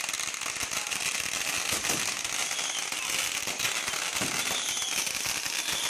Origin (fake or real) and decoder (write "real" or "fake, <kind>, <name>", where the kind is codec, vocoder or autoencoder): real